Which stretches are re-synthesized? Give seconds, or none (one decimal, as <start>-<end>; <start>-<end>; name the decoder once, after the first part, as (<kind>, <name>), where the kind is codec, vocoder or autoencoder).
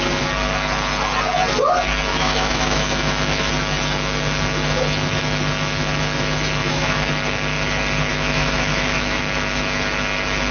2.1-3.5 (autoencoder, DAC-VAE); 6.6-7.1; 8.1-9.2